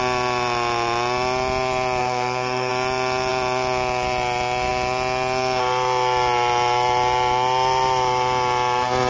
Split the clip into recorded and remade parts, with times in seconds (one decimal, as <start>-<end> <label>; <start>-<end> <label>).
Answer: 0.0-2.0 recorded; 2.0-2.7 remade; 2.7-9.1 recorded